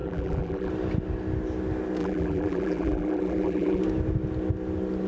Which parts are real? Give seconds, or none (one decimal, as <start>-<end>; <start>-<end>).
0.7-2.0; 3.8-5.1